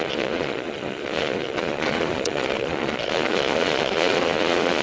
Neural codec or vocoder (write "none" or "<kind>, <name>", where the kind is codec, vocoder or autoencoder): vocoder, Vocos